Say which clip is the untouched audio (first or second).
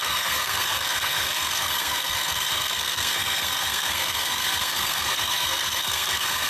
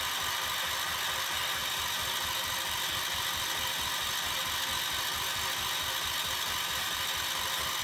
second